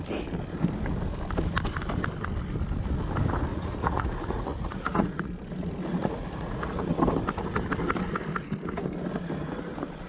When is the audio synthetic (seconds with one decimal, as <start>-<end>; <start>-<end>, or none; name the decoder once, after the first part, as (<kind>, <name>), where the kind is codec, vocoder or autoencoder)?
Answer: 3.5-5.3 (vocoder, Vocos); 6.0-6.8